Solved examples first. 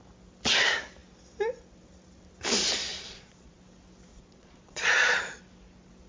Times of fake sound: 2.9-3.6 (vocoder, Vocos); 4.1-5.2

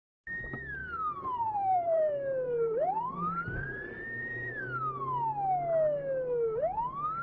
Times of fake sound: 0.8-4.6 (vocoder, BigVGAN v2)

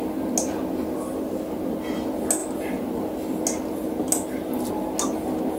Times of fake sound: none

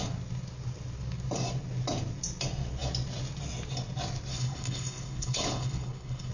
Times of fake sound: 4.3-6.3 (codec, HILCodec)

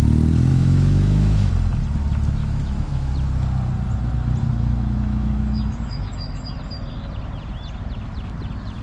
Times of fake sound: 0.5-1.5 (autoencoder, DAC-VAE); 2.4-3.1; 4.4-6.5

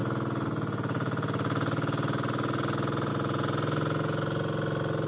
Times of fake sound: none

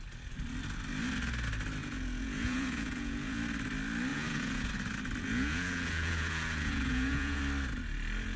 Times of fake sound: 1.8-3.4 (vocoder, Vocos); 4.1-4.7; 5.2-7.4